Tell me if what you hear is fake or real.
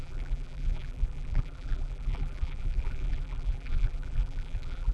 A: fake